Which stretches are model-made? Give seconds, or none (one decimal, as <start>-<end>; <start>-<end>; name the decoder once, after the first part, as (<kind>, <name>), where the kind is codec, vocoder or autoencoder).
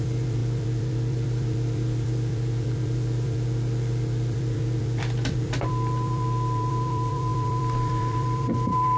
0.0-9.0 (vocoder, BigVGAN v2)